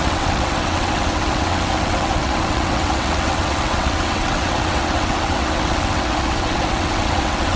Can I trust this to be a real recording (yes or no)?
no